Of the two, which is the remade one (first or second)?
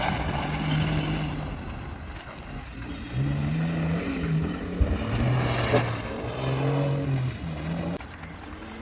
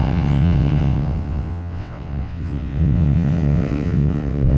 second